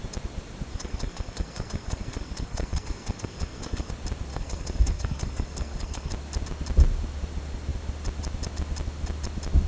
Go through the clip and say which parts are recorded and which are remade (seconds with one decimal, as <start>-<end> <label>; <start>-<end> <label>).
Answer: 0.0-0.7 recorded; 0.7-3.9 remade; 3.9-4.3 recorded; 4.3-6.1 remade; 6.1-9.7 recorded